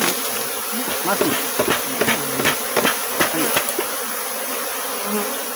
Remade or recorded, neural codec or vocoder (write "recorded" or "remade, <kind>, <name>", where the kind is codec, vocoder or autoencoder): recorded